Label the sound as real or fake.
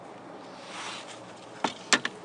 real